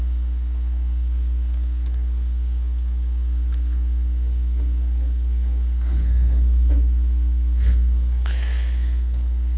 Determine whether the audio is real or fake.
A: fake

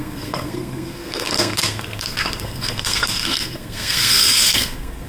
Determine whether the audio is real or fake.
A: fake